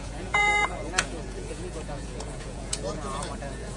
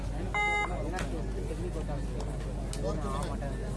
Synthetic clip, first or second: first